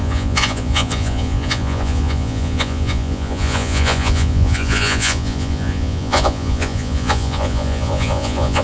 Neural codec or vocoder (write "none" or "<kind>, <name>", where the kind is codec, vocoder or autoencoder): vocoder, Vocos